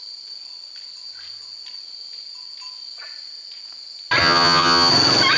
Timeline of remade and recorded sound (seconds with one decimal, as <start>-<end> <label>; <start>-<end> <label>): 0.0-4.2 recorded; 4.2-4.9 remade; 4.9-5.4 recorded